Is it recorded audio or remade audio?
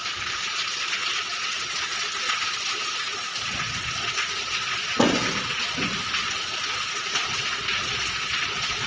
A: remade